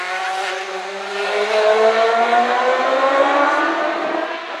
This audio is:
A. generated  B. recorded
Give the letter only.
B